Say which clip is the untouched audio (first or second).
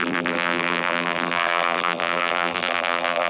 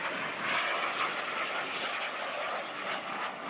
second